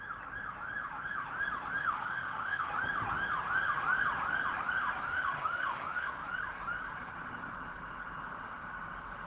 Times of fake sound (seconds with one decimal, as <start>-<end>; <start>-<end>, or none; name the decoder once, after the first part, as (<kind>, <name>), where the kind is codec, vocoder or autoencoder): 1.8-2.7 (autoencoder, DAC-VAE); 5.1-6.1